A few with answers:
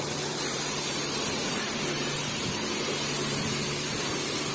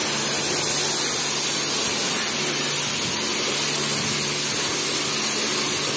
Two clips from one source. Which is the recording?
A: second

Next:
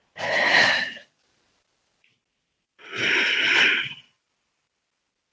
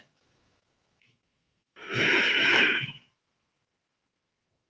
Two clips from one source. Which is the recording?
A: first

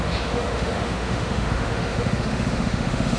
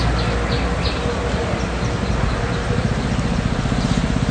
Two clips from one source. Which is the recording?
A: second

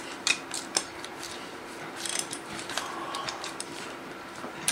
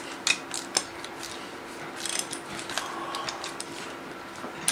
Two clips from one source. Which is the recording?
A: second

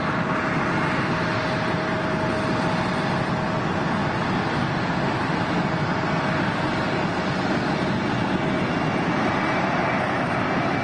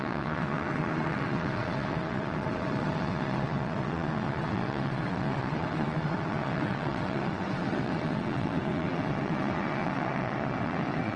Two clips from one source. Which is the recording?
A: first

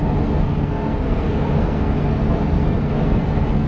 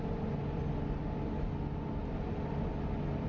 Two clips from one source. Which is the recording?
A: second